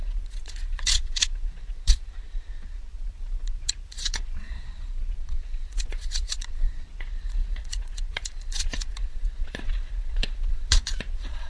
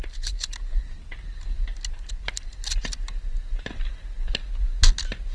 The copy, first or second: first